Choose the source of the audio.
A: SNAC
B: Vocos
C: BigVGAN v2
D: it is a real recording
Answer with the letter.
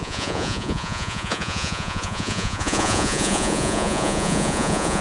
B